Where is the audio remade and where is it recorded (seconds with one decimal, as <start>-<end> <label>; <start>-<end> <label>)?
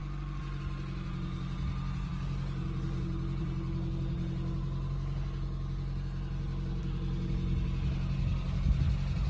0.0-9.3 recorded